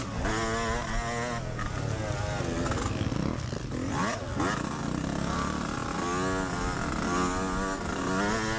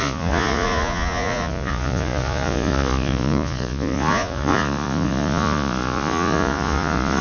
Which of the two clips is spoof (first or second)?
second